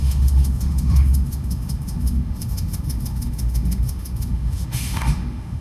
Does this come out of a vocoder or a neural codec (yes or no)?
yes